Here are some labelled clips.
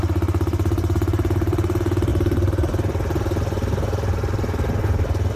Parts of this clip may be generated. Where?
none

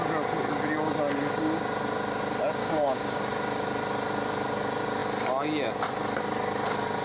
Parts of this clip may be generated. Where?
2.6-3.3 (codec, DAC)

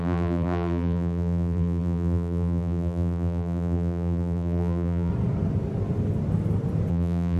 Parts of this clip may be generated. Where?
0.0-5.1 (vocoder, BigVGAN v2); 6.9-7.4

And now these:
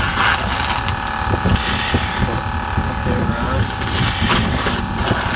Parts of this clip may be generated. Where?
none

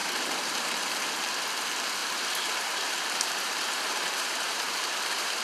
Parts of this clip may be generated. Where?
0.0-1.2 (vocoder, BigVGAN v2); 2.0-5.4